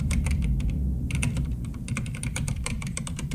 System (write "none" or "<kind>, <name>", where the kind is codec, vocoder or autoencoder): vocoder, BigVGAN v2